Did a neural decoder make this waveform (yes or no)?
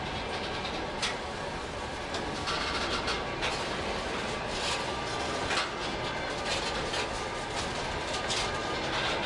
no